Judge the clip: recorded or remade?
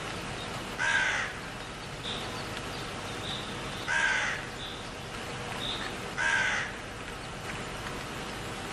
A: recorded